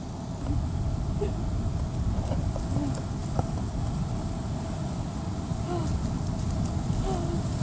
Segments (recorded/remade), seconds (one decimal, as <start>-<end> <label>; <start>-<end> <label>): 0.0-7.6 recorded